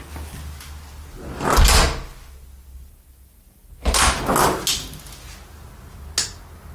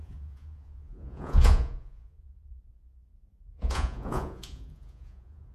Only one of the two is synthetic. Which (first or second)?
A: second